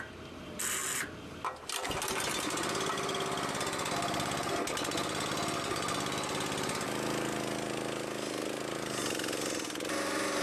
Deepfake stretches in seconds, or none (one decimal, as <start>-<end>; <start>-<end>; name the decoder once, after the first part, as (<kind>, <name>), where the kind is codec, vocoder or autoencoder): none